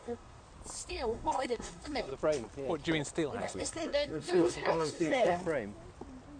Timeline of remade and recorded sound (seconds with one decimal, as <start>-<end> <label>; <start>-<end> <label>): 0.0-0.4 remade; 0.4-0.9 recorded; 0.9-2.1 remade; 2.1-3.4 recorded; 3.4-5.4 remade; 5.4-6.4 recorded